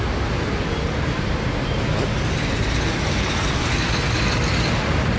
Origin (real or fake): real